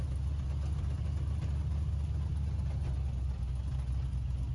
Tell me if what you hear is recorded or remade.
recorded